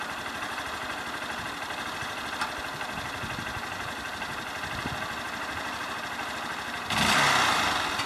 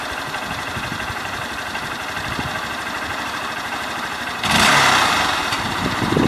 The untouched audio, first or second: first